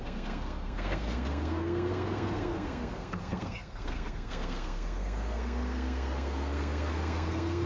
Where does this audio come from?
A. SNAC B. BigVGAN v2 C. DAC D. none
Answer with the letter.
A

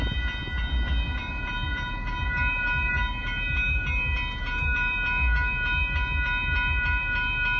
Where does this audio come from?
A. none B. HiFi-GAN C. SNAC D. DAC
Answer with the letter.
A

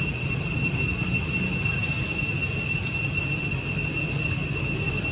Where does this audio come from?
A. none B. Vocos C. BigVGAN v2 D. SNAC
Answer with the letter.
A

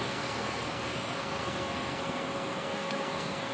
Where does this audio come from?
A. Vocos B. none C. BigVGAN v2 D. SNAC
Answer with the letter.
D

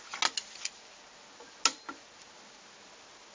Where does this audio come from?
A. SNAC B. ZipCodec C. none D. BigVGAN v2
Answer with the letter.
C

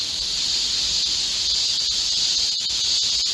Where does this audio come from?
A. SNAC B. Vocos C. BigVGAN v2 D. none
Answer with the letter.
D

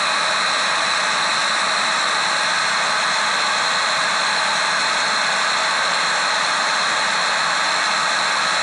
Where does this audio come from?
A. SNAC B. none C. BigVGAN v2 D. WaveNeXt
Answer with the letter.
B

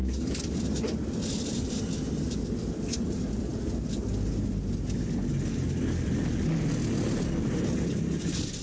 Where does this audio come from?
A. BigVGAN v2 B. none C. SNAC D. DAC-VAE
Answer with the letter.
B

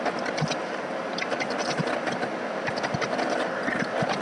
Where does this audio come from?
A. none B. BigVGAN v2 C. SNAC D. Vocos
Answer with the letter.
A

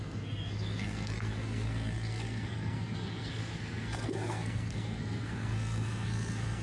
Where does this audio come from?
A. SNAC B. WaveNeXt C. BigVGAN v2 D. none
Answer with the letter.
A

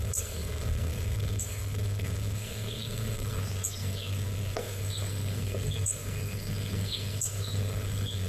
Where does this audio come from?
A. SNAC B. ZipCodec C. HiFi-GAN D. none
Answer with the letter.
A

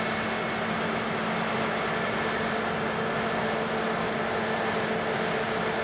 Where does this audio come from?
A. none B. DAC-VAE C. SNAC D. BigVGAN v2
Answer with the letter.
A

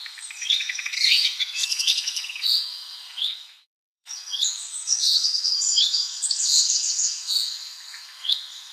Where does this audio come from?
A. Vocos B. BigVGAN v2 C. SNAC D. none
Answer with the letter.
C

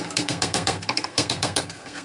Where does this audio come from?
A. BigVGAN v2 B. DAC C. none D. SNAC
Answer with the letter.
D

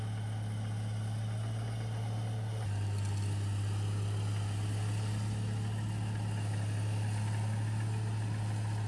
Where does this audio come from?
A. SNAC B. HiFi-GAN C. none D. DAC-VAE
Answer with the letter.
C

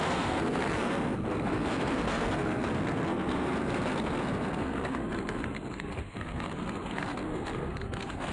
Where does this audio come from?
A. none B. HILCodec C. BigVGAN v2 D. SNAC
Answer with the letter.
D